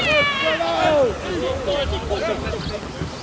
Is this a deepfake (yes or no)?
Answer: no